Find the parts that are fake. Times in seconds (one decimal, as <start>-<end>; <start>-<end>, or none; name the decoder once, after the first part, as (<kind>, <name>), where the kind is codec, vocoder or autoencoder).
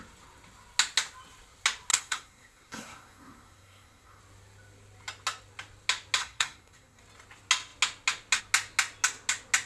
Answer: 1.9-4.2 (codec, SNAC); 6.2-7.0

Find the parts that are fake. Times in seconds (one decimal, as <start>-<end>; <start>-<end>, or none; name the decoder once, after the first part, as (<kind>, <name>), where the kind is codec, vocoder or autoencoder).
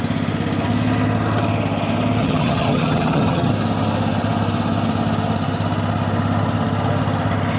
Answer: 2.2-3.5 (vocoder, HiFi-GAN)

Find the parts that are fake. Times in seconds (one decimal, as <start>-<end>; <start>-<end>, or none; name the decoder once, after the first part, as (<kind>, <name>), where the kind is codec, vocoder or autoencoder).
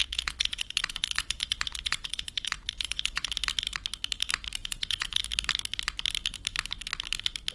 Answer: 0.0-3.3 (vocoder, Vocos); 4.6-5.2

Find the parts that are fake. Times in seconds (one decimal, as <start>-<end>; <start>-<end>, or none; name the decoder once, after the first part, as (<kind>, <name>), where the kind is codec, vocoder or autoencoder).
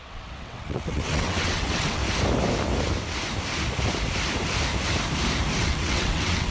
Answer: 0.0-2.0 (vocoder, WaveNeXt); 5.6-6.5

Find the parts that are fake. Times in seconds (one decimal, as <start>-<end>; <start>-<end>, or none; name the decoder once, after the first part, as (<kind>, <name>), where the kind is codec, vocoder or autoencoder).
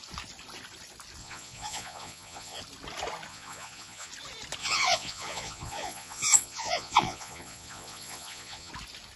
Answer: 1.2-2.6 (vocoder, Vocos); 3.3-4.1; 4.6-8.7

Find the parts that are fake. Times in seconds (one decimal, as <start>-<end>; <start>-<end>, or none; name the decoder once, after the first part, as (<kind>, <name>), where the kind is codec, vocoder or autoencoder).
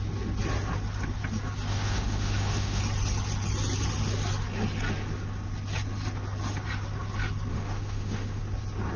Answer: 1.7-2.8 (autoencoder, DAC-VAE); 7.5-8.4